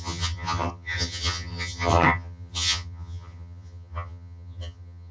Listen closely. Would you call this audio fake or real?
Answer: fake